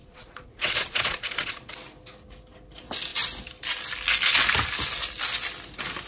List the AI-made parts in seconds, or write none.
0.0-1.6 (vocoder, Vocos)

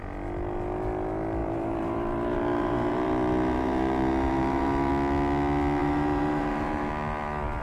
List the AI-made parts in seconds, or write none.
1.4-4.9 (vocoder, BigVGAN v2); 5.8-6.9

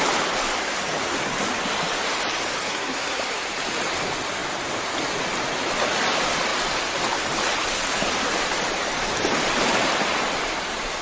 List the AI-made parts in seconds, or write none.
2.6-3.2 (codec, SNAC)

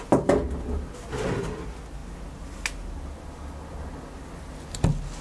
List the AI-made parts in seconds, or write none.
none

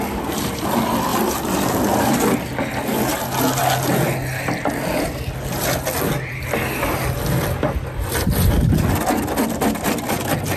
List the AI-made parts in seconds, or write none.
none

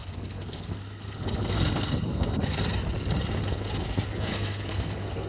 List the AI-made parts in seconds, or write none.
0.0-2.7 (codec, SNAC); 4.3-5.3

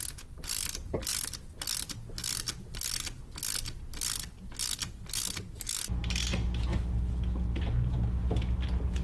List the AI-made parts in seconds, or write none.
none